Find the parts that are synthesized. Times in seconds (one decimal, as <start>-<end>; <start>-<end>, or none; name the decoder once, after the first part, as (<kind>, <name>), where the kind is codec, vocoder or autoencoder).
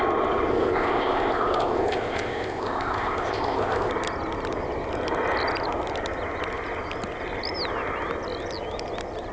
0.5-3.9 (codec, ZipCodec)